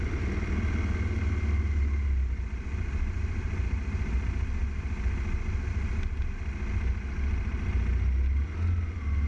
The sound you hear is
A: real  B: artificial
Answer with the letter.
A